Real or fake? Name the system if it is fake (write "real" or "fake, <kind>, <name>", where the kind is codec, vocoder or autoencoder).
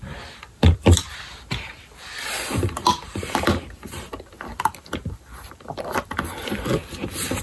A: fake, vocoder, BigVGAN v2